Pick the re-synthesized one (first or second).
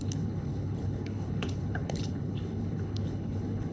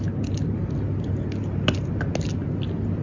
first